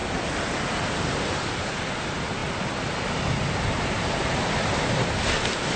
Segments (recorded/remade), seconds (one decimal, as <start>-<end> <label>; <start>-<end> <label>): 0.0-5.8 recorded

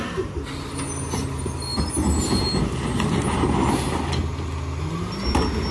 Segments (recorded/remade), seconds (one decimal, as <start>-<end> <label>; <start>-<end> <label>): 0.0-5.7 recorded

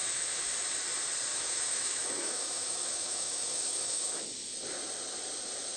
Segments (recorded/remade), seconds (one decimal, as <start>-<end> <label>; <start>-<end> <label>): 0.0-0.5 remade; 0.5-1.3 recorded; 1.3-4.2 remade; 4.2-5.8 recorded

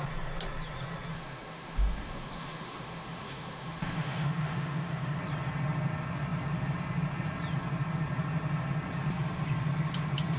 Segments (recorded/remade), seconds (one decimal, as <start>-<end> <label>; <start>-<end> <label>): 0.0-1.1 recorded; 1.1-5.2 remade; 5.2-10.4 recorded